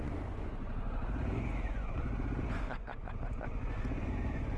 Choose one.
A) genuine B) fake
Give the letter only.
B